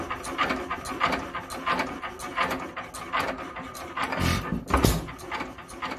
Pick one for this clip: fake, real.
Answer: real